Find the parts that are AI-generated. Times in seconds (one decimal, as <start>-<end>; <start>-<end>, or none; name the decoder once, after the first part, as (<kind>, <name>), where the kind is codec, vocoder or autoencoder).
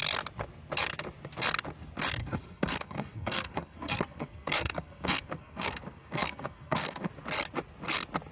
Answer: 2.2-7.1 (codec, SNAC)